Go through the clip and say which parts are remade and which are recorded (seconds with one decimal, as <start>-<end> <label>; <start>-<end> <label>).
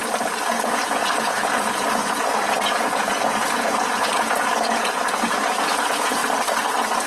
0.0-0.5 recorded; 0.5-6.2 remade; 6.2-7.1 recorded